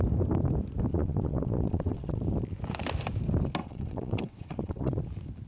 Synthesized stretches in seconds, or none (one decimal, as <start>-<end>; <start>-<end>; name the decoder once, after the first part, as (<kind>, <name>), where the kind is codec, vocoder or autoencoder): 0.9-2.2 (vocoder, WaveNeXt); 3.6-5.0